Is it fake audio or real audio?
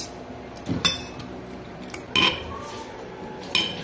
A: real